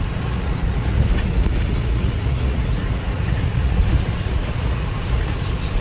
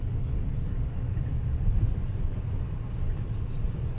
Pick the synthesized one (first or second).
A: first